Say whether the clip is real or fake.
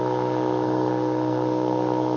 fake